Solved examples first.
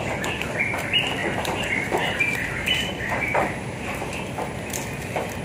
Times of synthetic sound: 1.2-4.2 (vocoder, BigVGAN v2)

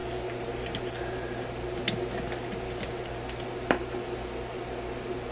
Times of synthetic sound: none

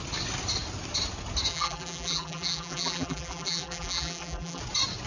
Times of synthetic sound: 1.5-4.6 (vocoder, BigVGAN v2)

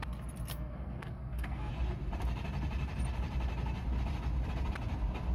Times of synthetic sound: 0.5-1.7 (codec, SNAC)

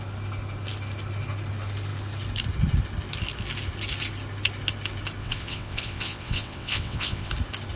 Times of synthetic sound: 5.2-7.3 (vocoder, WaveNeXt)

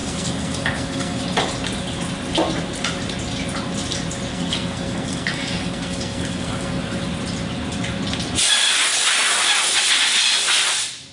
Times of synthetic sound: 0.0-1.2 (codec, SNAC); 4.3-6.8